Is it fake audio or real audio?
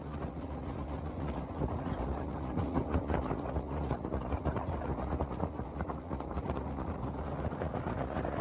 fake